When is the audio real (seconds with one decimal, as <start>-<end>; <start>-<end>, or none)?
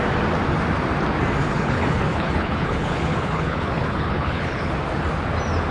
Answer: 0.0-1.4; 4.7-5.7